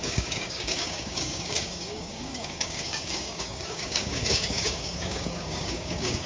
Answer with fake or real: fake